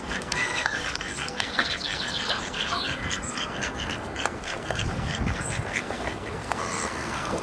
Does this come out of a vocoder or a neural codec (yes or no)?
yes